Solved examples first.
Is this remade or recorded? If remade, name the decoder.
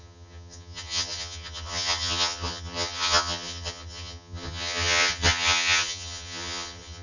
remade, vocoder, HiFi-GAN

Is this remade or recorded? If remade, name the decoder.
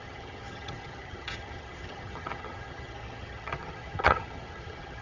remade, vocoder, HiFi-GAN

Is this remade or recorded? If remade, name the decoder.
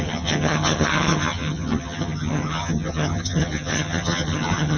remade, vocoder, HiFi-GAN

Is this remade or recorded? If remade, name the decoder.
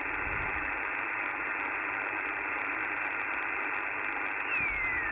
recorded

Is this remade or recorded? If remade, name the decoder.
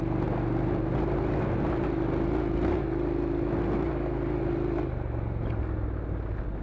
recorded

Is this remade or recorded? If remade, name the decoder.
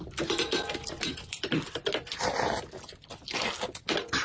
recorded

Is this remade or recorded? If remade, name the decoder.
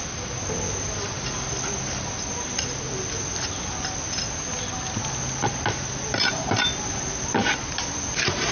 recorded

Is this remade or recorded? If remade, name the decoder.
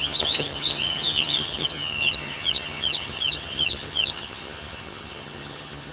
remade, vocoder, HiFi-GAN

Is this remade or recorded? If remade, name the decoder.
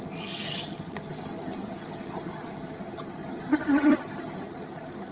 remade, vocoder, HiFi-GAN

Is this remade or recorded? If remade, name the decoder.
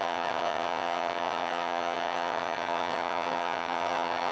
remade, vocoder, HiFi-GAN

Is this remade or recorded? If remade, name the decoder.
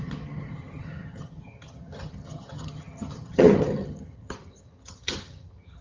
remade, vocoder, HiFi-GAN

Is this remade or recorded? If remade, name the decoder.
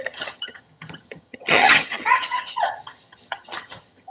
remade, vocoder, HiFi-GAN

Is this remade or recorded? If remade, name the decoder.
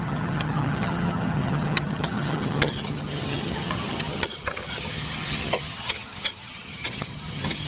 remade, vocoder, HiFi-GAN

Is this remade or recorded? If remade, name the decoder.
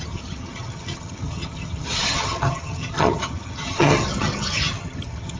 remade, vocoder, HiFi-GAN